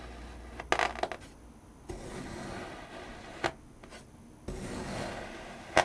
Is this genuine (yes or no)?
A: yes